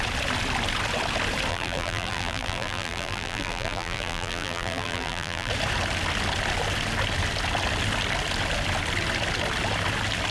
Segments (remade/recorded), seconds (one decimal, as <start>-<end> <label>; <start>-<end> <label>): 0.0-1.5 recorded; 1.5-5.5 remade; 5.5-10.3 recorded